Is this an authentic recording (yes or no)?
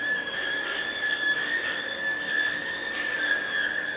no